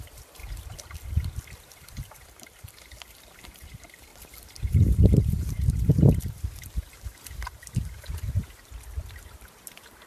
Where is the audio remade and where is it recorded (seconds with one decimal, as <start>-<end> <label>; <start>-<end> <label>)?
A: 0.0-0.4 remade; 0.4-1.7 recorded; 1.7-4.1 remade; 4.1-4.7 recorded; 4.7-5.9 remade; 5.9-9.2 recorded; 9.2-10.1 remade